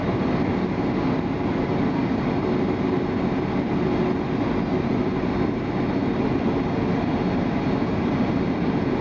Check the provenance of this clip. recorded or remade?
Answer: recorded